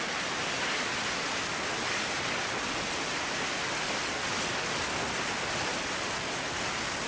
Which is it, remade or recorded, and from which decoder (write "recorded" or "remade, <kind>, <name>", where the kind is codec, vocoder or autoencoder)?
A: recorded